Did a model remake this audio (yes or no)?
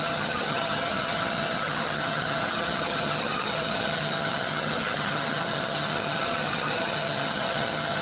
yes